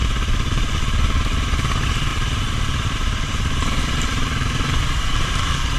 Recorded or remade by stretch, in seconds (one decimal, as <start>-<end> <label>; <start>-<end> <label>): 0.0-0.8 remade; 0.8-2.1 recorded; 2.1-5.8 remade